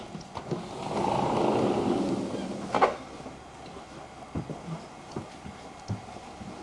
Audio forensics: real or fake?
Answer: real